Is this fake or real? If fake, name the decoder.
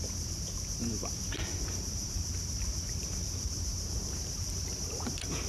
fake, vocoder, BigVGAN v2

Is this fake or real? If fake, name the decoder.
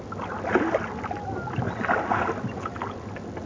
real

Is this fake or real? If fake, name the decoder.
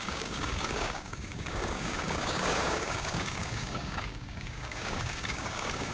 fake, codec, DAC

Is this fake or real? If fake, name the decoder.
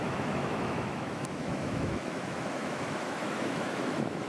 fake, autoencoder, DAC-VAE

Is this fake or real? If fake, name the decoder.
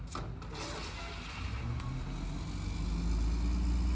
real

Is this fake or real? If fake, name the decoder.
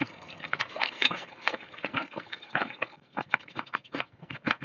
fake, codec, SNAC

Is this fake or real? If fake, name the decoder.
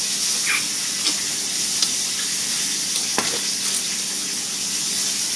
real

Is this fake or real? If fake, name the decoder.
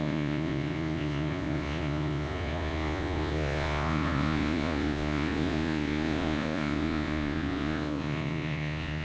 fake, vocoder, Vocos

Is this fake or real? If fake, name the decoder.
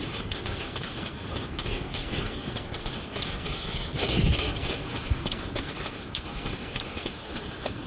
fake, codec, SNAC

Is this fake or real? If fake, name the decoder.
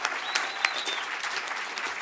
real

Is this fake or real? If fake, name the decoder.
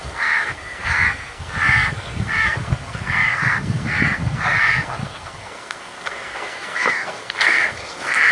fake, codec, SNAC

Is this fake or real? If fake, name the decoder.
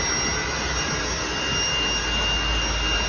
real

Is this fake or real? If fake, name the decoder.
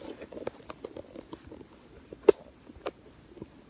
real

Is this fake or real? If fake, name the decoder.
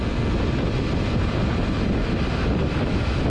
real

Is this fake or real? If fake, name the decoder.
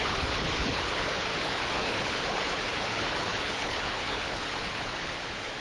fake, codec, HILCodec